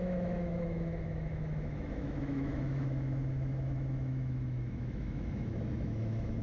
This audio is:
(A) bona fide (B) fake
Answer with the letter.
B